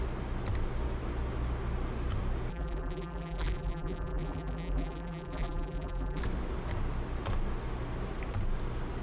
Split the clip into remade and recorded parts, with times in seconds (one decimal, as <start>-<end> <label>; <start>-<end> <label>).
0.0-2.5 recorded; 2.5-6.2 remade; 6.2-9.0 recorded